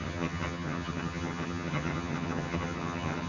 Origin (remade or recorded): remade